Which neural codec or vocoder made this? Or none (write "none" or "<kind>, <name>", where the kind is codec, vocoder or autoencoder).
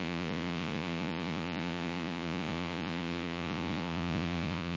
vocoder, Vocos